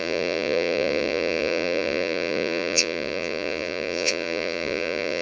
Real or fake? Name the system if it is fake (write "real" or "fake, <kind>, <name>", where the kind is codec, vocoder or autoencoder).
fake, vocoder, Vocos